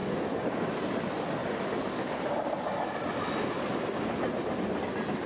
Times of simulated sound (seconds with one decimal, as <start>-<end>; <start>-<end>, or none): none